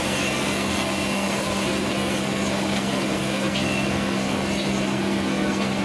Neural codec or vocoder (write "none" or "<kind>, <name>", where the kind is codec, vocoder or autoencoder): codec, SNAC